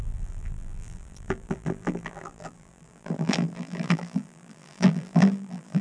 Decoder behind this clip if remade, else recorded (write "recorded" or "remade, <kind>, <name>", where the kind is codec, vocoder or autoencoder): remade, vocoder, BigVGAN v2